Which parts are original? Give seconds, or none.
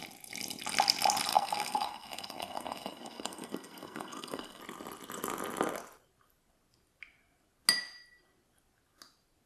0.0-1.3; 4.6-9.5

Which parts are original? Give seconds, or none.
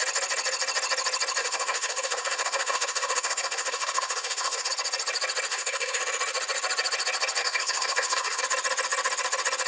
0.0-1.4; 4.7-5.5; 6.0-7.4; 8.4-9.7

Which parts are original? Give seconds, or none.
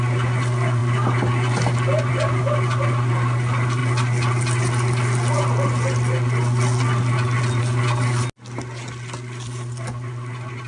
0.0-10.7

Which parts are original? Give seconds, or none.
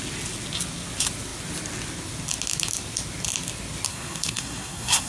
0.0-3.9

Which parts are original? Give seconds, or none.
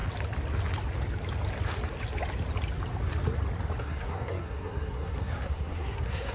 0.0-3.8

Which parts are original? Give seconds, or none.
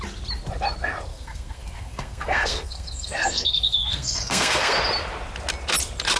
0.0-1.1; 4.8-6.2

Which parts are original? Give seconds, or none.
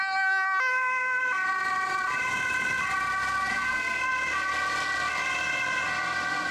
0.0-0.7; 1.2-3.5; 4.0-6.5